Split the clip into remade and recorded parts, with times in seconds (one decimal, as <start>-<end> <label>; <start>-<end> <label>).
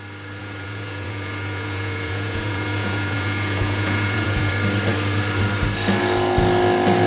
0.0-0.4 recorded; 0.4-4.5 remade; 4.5-7.1 recorded